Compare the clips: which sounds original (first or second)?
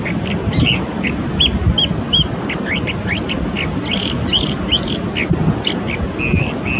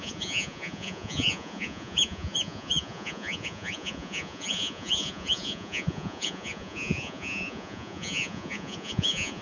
first